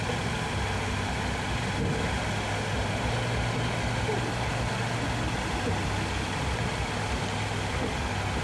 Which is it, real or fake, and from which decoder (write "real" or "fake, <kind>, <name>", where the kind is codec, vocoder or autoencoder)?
real